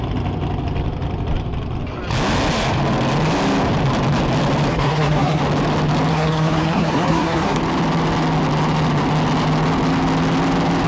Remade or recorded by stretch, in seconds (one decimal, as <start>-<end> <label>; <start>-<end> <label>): 0.0-4.7 recorded; 4.7-5.4 remade; 5.4-6.1 recorded; 6.1-7.6 remade; 7.6-10.9 recorded